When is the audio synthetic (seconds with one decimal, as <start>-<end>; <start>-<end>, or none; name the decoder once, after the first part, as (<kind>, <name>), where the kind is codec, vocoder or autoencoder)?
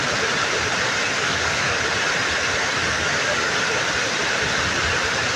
1.2-1.8 (codec, DAC); 2.8-3.5